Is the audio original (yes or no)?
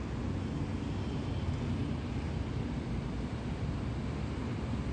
yes